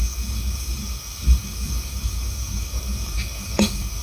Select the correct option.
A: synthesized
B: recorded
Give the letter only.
A